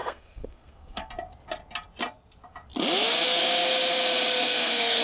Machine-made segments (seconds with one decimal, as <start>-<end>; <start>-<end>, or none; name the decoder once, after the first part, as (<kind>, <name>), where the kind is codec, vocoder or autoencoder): 0.0-1.1 (codec, SNAC); 4.4-5.0